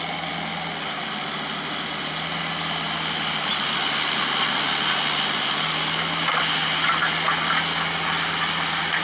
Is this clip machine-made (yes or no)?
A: no